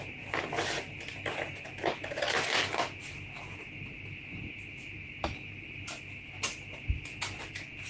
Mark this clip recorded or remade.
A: recorded